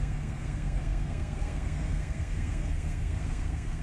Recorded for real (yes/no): no